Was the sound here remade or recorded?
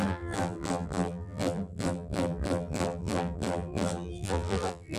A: remade